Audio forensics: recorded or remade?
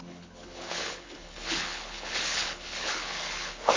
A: remade